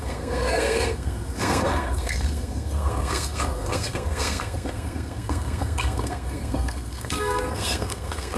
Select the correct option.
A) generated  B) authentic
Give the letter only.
A